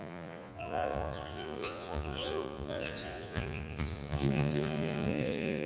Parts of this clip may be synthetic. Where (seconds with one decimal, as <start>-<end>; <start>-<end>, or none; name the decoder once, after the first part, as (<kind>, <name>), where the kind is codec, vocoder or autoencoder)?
0.0-5.7 (vocoder, Vocos)